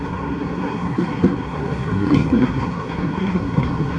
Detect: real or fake fake